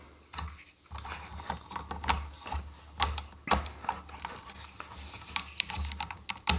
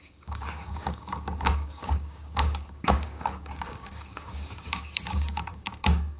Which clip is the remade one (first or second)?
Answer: second